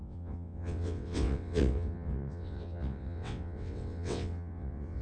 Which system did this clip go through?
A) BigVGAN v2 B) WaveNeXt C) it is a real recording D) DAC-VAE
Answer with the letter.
B